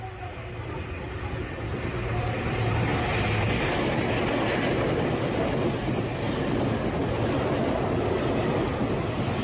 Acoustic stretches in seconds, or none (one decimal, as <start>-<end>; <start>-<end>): 0.0-9.4